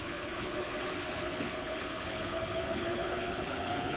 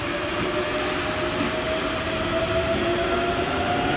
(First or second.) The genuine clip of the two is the second